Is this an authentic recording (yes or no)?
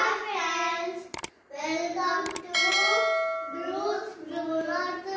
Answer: yes